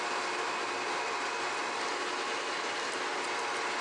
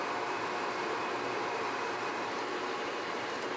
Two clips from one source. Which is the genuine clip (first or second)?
first